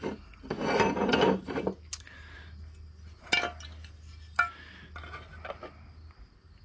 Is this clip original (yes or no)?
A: yes